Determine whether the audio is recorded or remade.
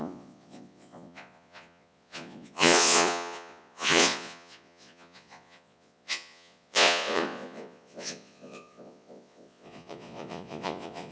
remade